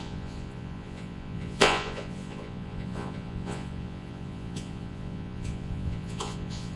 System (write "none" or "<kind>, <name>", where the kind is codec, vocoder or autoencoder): vocoder, Vocos